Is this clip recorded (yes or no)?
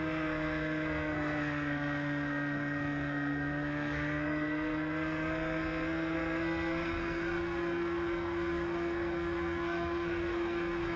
no